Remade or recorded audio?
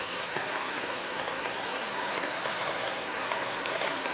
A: remade